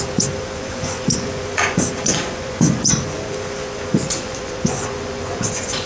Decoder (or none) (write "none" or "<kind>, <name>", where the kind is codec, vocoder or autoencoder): vocoder, Vocos